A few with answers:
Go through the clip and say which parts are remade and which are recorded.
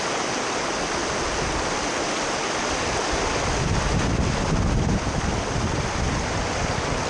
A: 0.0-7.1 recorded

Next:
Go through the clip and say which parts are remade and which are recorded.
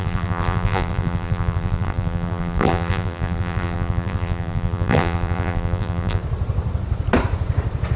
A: 0.0-6.2 remade; 6.2-8.0 recorded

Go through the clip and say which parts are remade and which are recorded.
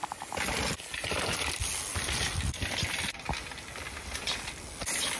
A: 0.0-5.2 recorded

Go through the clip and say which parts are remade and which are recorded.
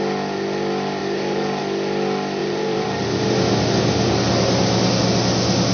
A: 0.0-1.0 recorded; 1.0-1.6 remade; 1.6-2.4 recorded; 2.4-4.1 remade; 4.1-5.7 recorded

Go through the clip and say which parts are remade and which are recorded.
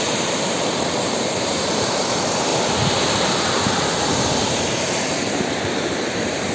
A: 0.0-2.5 remade; 2.5-4.5 recorded; 4.5-6.5 remade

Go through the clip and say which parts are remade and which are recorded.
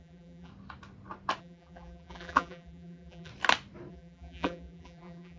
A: 0.0-0.5 remade; 0.5-1.4 recorded; 1.4-3.3 remade; 3.3-3.9 recorded; 3.9-5.4 remade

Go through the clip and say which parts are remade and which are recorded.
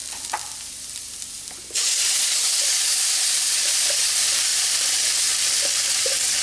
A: 0.0-3.5 recorded; 3.5-6.4 remade